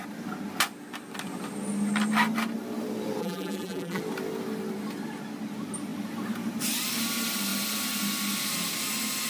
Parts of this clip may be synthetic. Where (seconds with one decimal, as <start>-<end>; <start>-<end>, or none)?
3.2-4.0